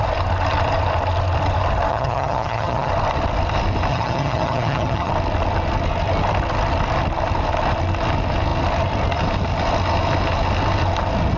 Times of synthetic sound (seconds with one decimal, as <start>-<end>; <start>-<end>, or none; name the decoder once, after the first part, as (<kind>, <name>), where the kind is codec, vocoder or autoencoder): 1.9-2.9 (vocoder, HiFi-GAN); 3.9-5.1